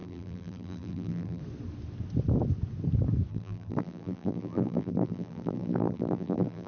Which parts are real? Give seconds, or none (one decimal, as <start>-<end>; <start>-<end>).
1.4-3.3